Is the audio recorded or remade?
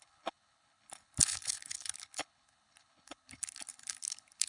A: remade